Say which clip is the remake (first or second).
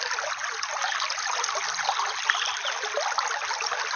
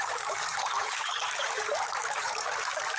second